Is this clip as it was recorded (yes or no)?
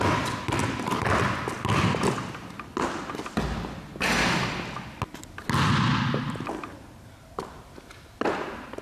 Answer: yes